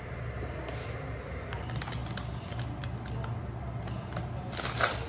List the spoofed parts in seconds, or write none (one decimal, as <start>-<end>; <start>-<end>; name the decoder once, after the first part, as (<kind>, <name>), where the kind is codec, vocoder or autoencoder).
none